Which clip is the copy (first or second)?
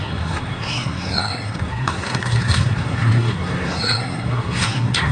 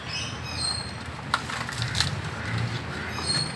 first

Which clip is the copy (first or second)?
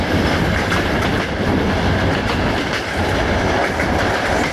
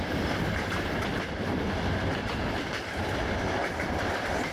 second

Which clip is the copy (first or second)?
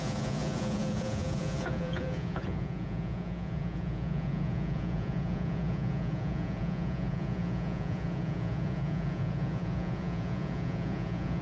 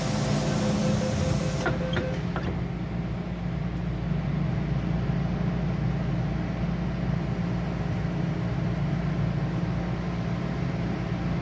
first